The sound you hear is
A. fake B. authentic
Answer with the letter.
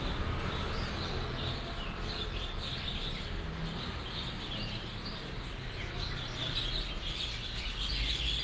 B